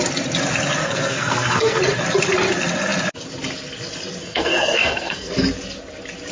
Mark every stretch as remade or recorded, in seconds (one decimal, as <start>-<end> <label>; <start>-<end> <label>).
0.0-0.8 recorded; 0.8-1.8 remade; 1.8-4.2 recorded; 4.2-5.3 remade; 5.3-6.3 recorded